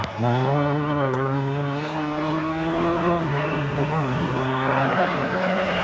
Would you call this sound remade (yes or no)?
yes